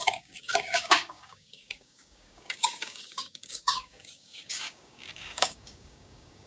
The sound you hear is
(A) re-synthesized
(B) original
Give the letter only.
A